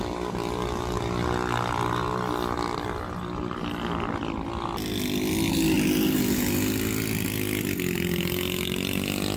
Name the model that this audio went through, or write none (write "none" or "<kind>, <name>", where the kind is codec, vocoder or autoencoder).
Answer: none